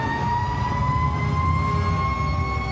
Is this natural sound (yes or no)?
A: yes